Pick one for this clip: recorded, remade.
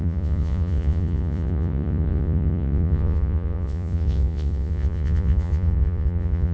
remade